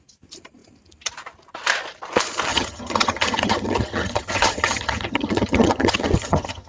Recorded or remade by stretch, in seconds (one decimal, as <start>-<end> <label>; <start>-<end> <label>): 0.0-2.5 recorded; 2.5-6.7 remade